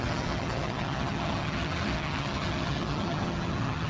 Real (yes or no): no